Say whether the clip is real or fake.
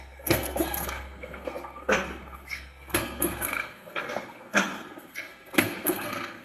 fake